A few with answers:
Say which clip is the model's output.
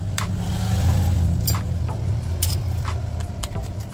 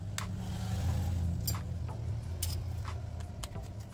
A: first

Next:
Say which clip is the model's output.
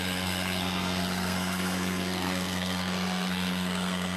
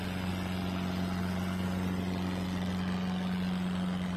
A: first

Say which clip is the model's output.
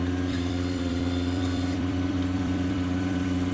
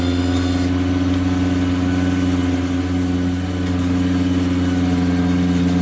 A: first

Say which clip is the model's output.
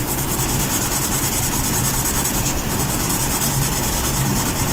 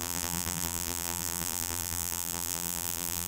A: second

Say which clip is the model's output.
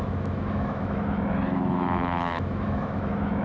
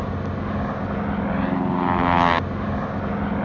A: first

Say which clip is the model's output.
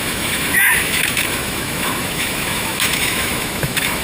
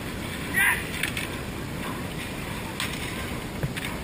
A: first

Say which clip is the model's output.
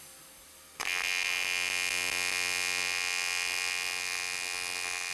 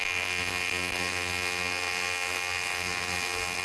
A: second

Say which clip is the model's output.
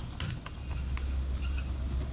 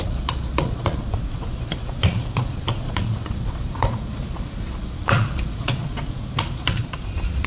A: second